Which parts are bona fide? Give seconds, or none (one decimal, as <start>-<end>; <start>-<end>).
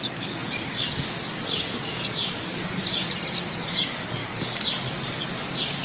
2.8-3.7